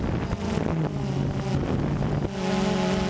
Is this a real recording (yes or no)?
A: yes